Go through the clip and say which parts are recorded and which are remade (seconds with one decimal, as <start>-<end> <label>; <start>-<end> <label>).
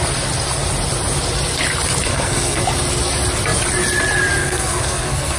0.0-2.1 recorded; 2.1-2.6 remade; 2.6-4.4 recorded; 4.4-5.4 remade